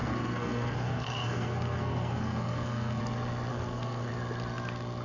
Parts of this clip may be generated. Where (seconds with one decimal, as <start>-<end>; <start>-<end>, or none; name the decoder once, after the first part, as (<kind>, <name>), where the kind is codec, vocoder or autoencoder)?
0.0-3.0 (codec, SNAC); 3.5-4.1